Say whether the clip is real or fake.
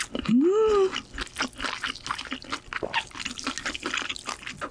real